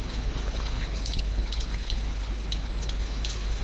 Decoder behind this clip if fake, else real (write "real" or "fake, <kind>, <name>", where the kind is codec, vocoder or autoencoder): fake, codec, HILCodec